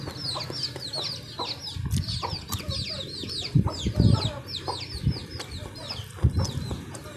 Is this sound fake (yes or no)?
no